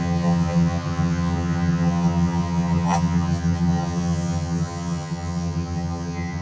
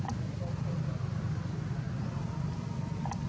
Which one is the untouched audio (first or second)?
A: second